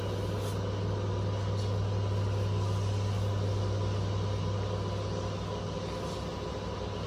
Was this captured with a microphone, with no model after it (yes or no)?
yes